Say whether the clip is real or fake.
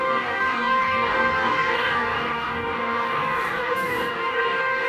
fake